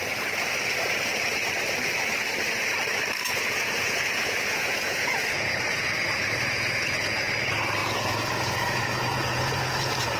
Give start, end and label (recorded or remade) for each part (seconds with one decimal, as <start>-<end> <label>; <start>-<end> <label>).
0.0-3.2 recorded; 3.2-7.3 remade; 7.3-7.8 recorded; 7.8-10.2 remade